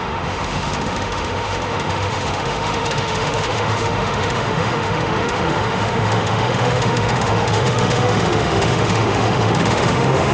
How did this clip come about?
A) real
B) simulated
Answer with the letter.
B